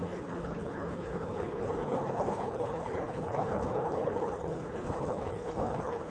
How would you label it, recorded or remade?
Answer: remade